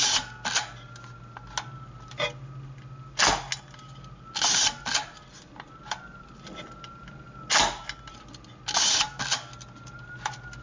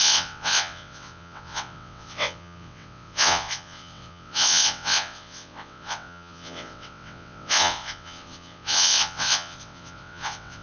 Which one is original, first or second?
first